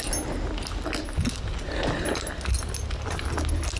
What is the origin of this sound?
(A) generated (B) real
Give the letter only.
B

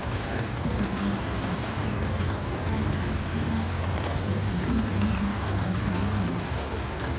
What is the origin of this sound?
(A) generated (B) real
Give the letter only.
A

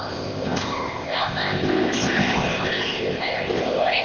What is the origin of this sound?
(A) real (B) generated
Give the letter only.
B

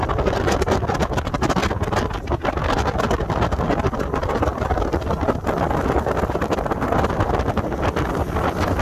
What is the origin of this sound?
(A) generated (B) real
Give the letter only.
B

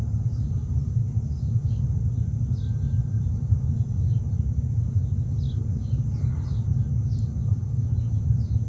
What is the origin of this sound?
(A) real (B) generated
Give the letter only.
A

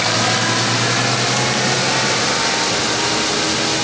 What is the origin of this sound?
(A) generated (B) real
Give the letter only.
B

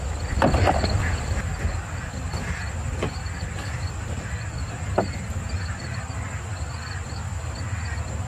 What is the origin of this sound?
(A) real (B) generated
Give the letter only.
A